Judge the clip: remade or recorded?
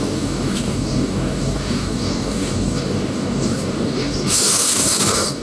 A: remade